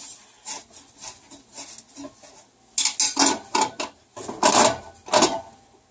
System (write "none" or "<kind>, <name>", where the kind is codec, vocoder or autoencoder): none